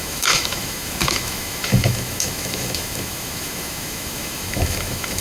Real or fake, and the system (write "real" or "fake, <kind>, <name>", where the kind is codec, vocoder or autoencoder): fake, autoencoder, DAC-VAE